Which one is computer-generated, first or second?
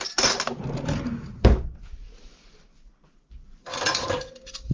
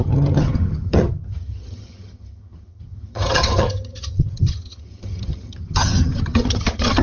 second